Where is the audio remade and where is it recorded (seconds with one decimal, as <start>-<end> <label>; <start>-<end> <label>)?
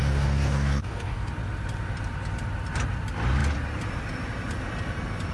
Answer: 0.0-1.3 remade; 1.3-5.3 recorded